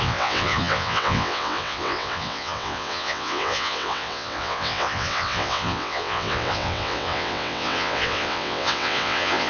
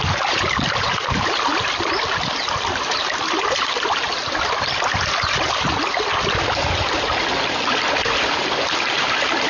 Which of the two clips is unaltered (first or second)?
second